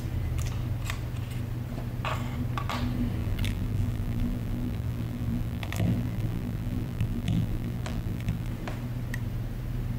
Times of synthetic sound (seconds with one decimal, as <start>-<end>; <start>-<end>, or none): 3.2-8.5